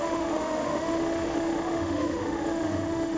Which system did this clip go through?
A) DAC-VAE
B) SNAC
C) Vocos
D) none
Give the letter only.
A